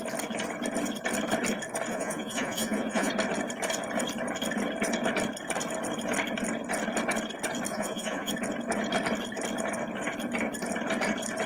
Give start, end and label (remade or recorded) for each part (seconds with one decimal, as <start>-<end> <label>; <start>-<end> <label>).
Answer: 0.0-1.9 recorded; 1.9-3.1 remade; 3.1-7.7 recorded; 7.7-8.3 remade; 8.3-11.5 recorded